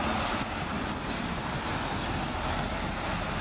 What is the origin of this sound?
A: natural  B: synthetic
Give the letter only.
A